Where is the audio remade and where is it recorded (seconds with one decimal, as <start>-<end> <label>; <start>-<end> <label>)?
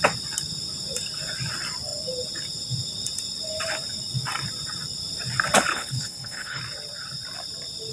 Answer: 0.0-5.7 recorded; 5.7-6.6 remade; 6.6-7.9 recorded